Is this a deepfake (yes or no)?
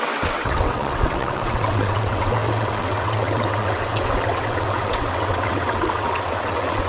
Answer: yes